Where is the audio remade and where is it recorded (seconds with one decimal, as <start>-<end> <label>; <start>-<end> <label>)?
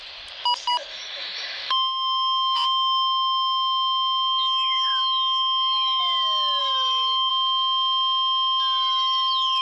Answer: 0.0-0.9 recorded; 0.9-6.0 remade; 6.0-6.6 recorded; 6.6-7.3 remade; 7.3-9.6 recorded